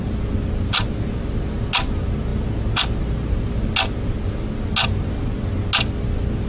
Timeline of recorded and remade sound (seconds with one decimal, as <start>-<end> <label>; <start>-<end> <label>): 0.0-6.5 recorded